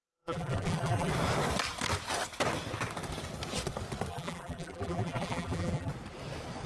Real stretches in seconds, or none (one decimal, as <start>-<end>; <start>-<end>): 1.1-4.1; 5.9-6.7